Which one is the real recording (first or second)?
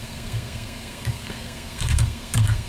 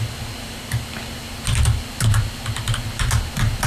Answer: second